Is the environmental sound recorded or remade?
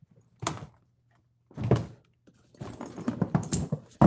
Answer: recorded